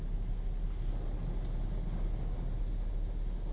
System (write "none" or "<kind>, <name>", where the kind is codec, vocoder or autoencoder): none